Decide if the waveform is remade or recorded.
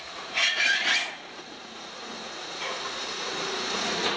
remade